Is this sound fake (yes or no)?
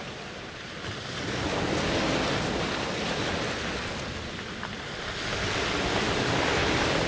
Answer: no